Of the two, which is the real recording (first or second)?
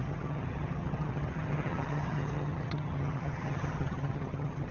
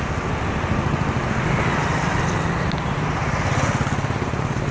second